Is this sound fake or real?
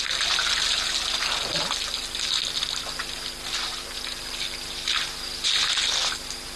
real